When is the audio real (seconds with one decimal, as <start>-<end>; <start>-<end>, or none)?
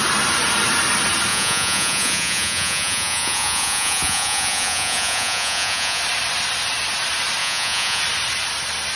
0.0-1.3; 6.0-7.4; 8.0-9.0